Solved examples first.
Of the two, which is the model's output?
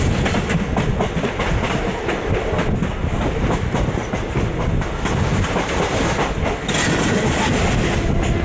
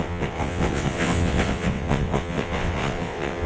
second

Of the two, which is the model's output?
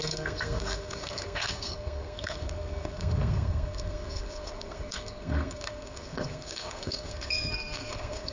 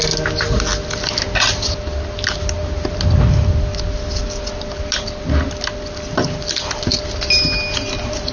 first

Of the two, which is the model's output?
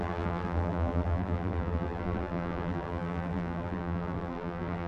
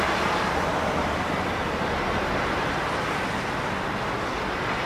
first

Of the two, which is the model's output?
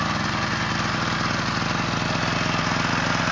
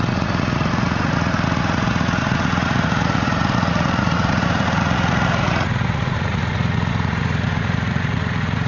second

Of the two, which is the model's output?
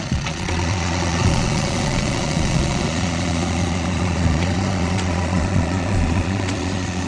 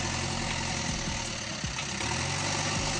first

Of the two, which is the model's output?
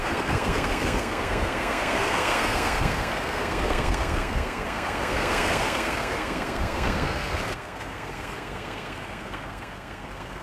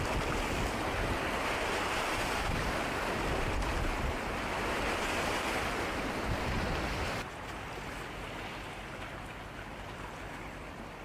first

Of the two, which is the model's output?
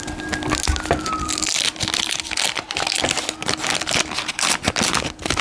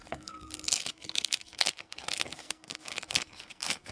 second